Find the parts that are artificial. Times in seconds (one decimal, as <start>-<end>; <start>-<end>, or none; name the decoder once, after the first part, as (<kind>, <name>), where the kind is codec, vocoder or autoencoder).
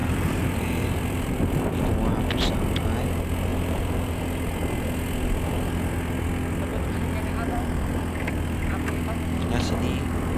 0.0-1.7 (vocoder, BigVGAN v2); 3.5-4.2; 6.7-8.3